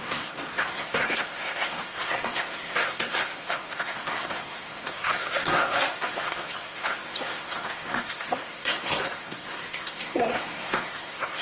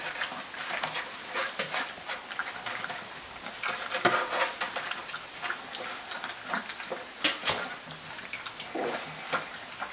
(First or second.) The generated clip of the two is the first